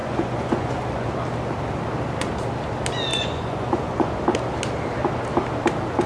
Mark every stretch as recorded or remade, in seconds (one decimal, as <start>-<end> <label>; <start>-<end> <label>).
0.0-1.1 remade; 1.1-3.1 recorded; 3.1-4.2 remade; 4.2-6.1 recorded